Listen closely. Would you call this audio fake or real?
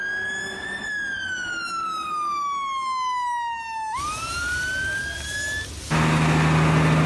real